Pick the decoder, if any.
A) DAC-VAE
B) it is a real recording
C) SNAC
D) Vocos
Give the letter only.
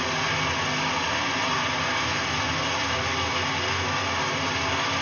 B